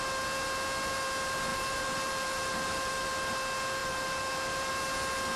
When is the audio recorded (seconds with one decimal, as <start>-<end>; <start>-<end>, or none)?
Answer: 0.0-1.5; 3.1-3.8; 4.7-5.4